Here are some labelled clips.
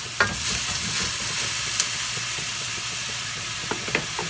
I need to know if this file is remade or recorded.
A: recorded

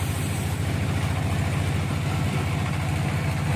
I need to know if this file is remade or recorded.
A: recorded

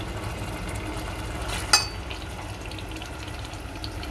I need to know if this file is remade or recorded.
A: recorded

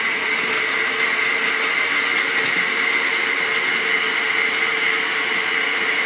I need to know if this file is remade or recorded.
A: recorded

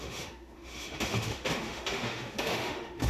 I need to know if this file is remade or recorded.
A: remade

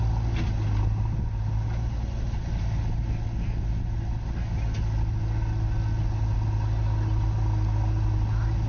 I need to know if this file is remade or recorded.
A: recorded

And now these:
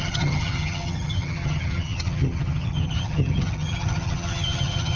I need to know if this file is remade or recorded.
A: remade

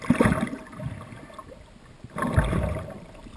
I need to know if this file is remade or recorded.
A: recorded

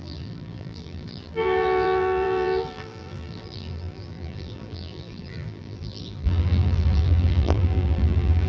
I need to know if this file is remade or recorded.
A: remade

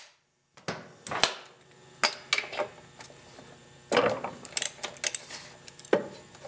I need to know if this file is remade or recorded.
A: recorded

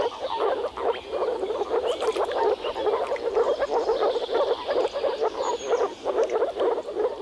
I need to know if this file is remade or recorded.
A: recorded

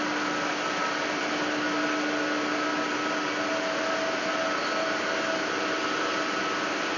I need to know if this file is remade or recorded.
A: recorded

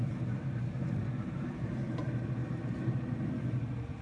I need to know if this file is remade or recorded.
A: recorded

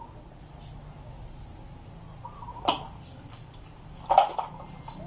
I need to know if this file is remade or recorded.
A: recorded